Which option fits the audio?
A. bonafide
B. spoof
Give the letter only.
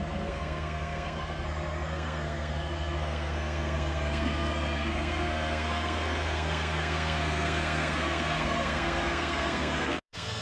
B